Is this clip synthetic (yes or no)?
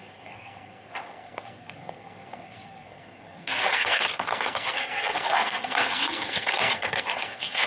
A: yes